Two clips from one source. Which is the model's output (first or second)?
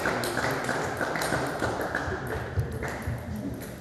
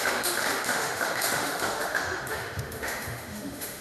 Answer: second